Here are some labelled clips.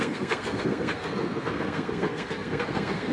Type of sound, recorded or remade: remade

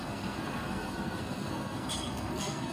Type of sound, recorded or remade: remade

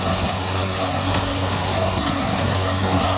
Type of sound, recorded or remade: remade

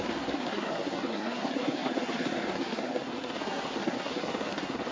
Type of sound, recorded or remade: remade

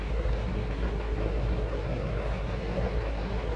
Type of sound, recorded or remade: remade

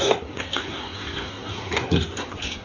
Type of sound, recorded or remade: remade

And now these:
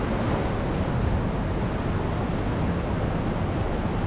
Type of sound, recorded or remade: recorded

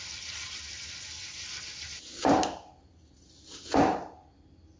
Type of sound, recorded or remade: recorded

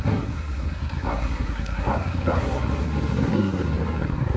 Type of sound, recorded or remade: remade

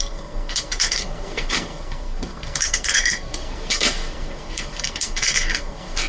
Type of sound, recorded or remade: remade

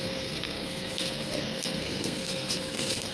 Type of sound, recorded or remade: remade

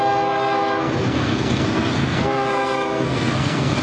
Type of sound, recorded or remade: remade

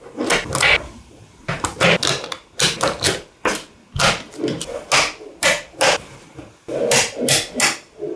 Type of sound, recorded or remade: recorded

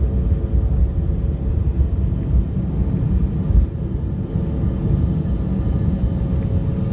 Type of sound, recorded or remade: recorded